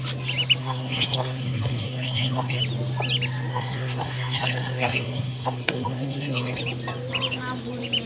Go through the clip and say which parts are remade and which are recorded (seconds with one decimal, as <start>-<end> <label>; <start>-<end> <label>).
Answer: 0.0-0.6 recorded; 0.6-2.6 remade; 2.6-3.5 recorded; 3.5-6.6 remade; 6.6-8.1 recorded